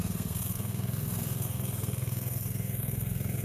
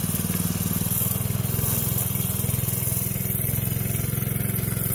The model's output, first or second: first